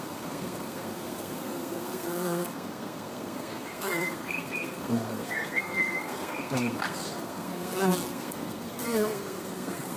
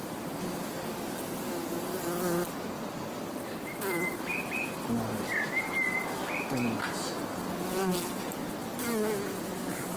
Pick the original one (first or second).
second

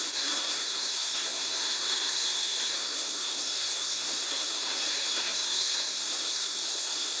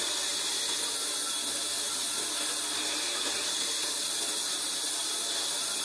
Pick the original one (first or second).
second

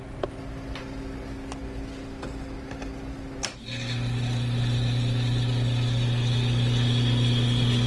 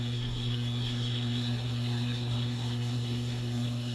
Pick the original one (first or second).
first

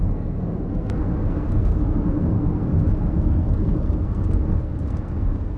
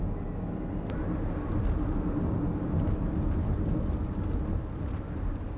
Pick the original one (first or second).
second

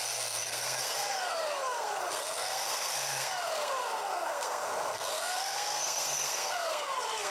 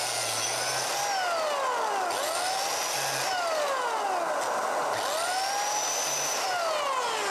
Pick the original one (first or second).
second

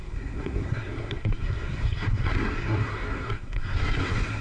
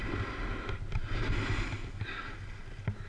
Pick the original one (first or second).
second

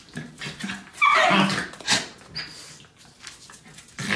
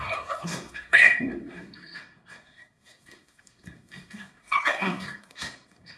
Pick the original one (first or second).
first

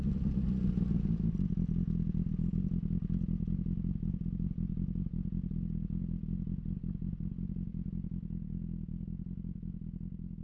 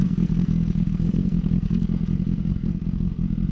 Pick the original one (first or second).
first